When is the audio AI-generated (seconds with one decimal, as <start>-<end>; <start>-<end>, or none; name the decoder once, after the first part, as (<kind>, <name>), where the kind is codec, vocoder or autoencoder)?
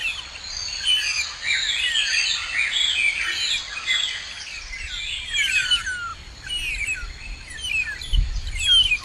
none